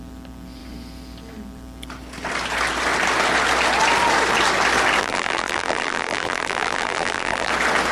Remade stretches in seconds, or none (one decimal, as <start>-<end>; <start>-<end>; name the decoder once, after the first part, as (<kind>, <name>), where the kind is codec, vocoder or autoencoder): 5.0-7.5 (vocoder, BigVGAN v2)